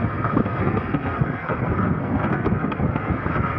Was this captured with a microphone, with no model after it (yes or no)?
no